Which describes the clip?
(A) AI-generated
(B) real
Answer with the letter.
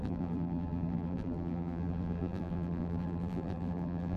A